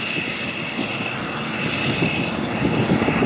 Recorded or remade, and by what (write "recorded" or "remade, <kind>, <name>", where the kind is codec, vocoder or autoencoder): recorded